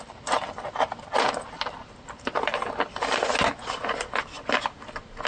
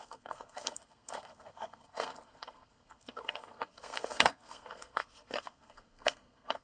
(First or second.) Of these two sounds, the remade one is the second